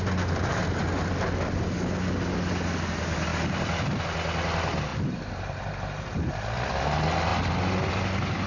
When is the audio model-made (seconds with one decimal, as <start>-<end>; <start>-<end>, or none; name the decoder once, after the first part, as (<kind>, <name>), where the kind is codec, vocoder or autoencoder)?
4.9-6.3 (vocoder, BigVGAN v2)